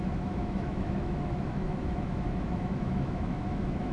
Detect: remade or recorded remade